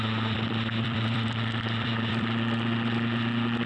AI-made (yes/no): yes